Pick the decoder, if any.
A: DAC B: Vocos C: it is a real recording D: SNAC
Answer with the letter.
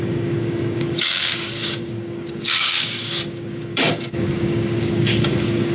A